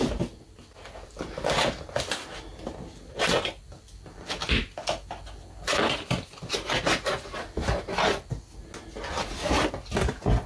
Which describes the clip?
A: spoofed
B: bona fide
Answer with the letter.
B